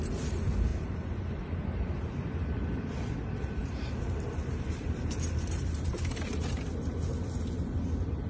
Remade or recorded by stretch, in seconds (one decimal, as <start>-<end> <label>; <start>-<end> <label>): 0.0-0.7 recorded; 0.7-1.3 remade; 1.3-3.6 recorded; 3.6-6.5 remade; 6.5-8.3 recorded